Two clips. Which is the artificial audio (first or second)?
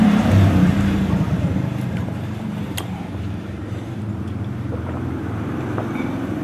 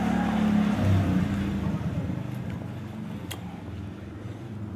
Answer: first